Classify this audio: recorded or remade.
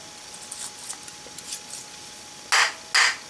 recorded